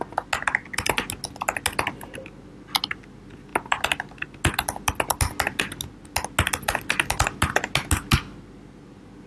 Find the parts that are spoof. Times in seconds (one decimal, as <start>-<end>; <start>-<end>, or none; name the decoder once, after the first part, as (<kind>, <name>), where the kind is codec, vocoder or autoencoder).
none